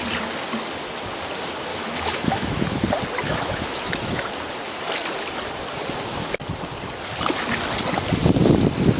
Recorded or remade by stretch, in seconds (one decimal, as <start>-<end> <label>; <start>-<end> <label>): 0.0-1.7 recorded; 1.7-2.6 remade; 2.6-3.2 recorded; 3.2-4.2 remade; 4.2-9.0 recorded